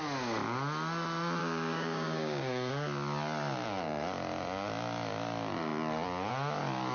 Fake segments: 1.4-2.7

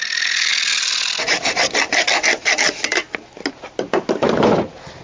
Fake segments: none